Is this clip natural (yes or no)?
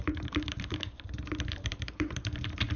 no